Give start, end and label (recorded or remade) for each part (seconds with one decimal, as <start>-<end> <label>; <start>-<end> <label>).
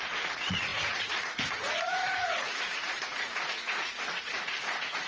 0.0-5.1 remade